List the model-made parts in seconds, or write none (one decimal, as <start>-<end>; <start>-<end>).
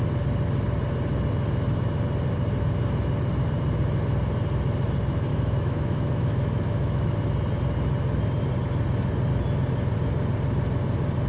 5.3-7.2